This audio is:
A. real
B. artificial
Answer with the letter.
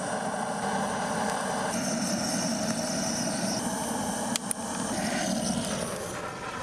A